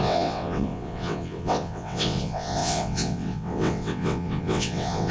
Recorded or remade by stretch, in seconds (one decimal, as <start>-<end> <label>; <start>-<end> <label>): 0.0-5.1 remade